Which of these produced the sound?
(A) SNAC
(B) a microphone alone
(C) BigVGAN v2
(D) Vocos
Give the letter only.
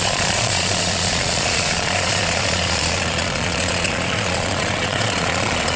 D